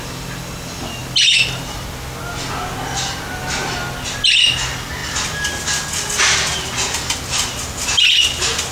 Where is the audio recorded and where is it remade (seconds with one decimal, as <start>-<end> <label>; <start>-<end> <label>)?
0.0-8.7 recorded